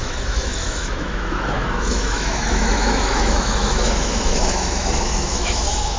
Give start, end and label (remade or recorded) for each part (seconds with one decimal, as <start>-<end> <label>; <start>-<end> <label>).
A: 0.0-6.0 remade